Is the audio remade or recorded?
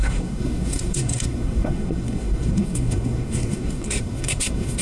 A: remade